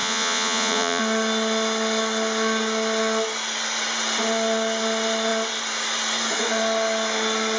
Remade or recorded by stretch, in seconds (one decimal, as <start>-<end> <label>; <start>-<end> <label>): 0.0-1.0 remade; 1.0-7.6 recorded